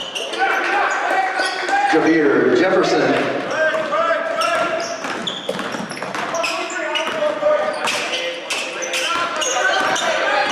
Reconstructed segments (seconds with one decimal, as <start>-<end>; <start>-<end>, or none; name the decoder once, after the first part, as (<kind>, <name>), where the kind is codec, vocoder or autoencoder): 0.8-2.5 (vocoder, BigVGAN v2); 3.0-5.2; 9.6-10.5